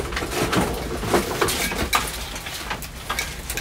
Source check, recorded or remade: recorded